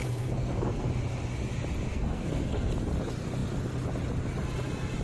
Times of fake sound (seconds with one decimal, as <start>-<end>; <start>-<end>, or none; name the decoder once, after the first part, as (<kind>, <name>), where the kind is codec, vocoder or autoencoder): 0.0-0.9 (codec, SNAC); 1.9-2.7